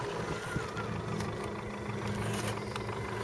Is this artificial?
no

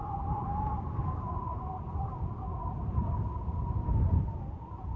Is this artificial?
no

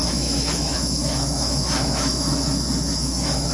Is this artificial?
yes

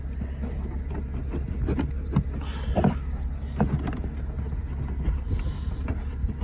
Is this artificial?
no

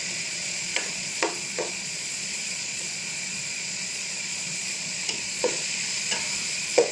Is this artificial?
yes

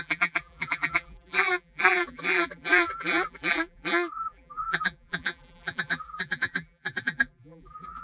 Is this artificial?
yes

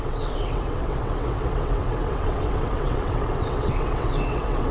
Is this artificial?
yes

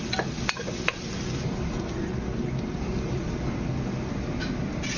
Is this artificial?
no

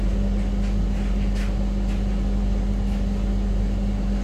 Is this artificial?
no